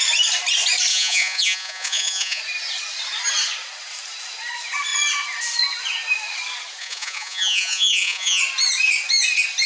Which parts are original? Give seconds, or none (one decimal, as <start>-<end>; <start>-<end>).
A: 0.0-0.9; 2.4-6.8; 8.4-9.7